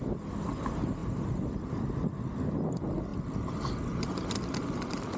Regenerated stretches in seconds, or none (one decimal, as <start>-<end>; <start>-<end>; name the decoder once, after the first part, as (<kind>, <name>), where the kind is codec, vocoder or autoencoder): none